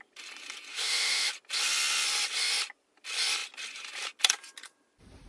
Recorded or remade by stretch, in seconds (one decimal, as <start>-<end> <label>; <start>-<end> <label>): 0.0-0.7 recorded; 0.7-1.3 remade; 1.3-5.3 recorded

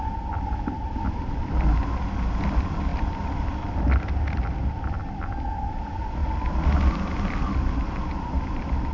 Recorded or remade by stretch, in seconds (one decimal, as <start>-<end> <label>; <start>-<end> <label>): 0.0-8.9 recorded

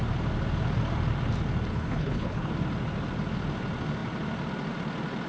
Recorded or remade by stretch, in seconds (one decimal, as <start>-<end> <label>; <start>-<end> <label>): 0.0-1.7 recorded; 1.7-2.5 remade; 2.5-5.3 recorded

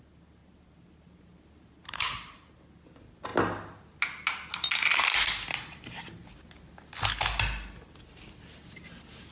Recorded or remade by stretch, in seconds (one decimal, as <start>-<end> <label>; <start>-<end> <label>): 0.0-0.4 recorded; 0.4-2.5 remade; 2.5-9.3 recorded